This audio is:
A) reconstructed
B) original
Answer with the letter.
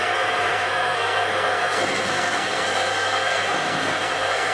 A